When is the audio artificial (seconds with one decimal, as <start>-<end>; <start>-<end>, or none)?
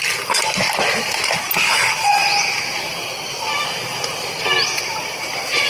none